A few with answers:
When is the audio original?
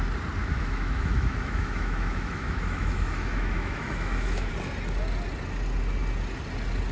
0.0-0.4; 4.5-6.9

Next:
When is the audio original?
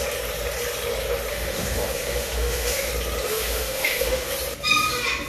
0.0-1.3; 2.9-3.3; 4.3-5.3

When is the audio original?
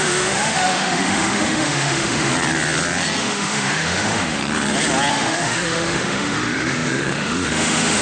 2.3-3.2; 4.4-5.1